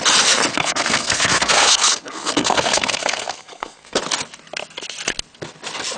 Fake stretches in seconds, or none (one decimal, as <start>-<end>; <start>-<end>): 0.5-4.0